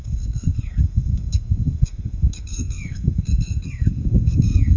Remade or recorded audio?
remade